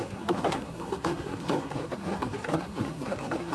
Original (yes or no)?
no